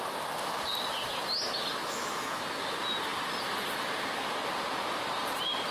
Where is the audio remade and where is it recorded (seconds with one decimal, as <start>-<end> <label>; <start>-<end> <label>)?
0.0-1.8 recorded; 1.8-2.4 remade; 2.4-5.7 recorded